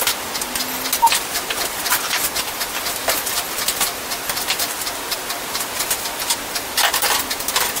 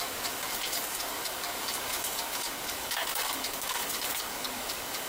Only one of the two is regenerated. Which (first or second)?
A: second